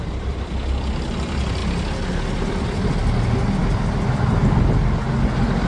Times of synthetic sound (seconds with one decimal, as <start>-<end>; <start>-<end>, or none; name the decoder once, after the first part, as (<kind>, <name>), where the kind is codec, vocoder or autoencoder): none